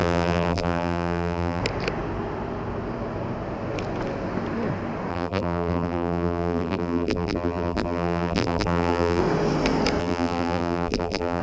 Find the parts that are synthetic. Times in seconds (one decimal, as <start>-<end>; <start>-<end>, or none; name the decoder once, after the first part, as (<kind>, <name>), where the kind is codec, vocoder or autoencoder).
0.0-1.6 (vocoder, BigVGAN v2); 5.1-9.2; 10.0-11.4